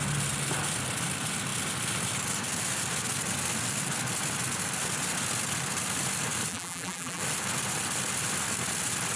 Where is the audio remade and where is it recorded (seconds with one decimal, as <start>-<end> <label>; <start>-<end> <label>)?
0.0-6.5 recorded; 6.5-7.2 remade; 7.2-9.2 recorded